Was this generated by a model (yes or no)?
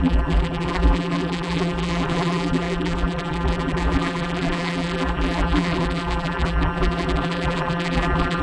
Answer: yes